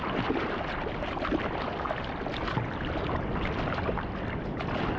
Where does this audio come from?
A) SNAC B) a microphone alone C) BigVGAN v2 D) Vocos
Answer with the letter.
B